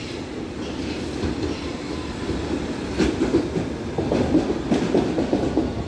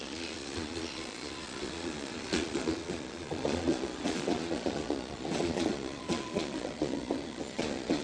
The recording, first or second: first